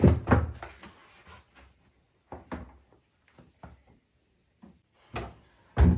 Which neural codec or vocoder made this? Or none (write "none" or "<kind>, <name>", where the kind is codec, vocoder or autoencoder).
none